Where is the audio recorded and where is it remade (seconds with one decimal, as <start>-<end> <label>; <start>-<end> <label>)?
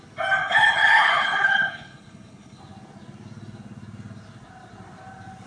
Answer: 0.0-0.4 recorded; 0.4-2.6 remade; 2.6-5.5 recorded